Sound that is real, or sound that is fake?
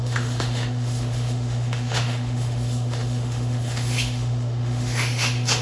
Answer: fake